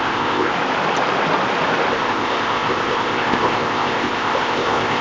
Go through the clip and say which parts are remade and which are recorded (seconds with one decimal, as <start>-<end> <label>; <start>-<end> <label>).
0.0-0.5 remade; 0.5-1.9 recorded; 1.9-5.0 remade